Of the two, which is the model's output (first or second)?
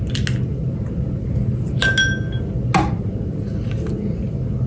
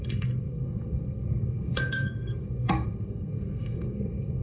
second